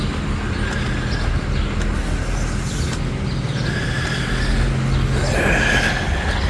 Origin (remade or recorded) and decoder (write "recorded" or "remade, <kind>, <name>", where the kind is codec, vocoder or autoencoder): recorded